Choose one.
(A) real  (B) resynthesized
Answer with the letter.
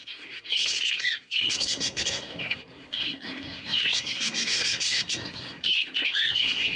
B